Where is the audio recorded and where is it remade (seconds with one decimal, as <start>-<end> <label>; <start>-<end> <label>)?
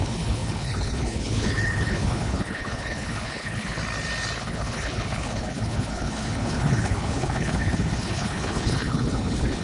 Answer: 0.0-3.8 remade; 3.8-4.4 recorded; 4.4-9.6 remade